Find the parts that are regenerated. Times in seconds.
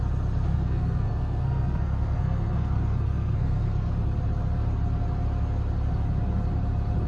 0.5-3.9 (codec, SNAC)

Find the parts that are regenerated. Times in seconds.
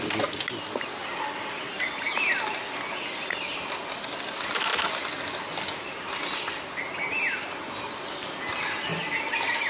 none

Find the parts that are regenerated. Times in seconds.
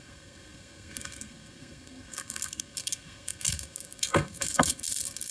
0.0-5.3 (codec, SNAC)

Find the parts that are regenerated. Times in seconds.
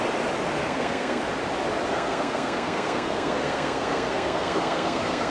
0.6-1.2 (codec, SNAC); 1.9-5.3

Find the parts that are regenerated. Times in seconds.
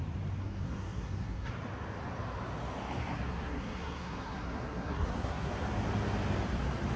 0.4-1.5 (codec, SNAC); 3.1-5.5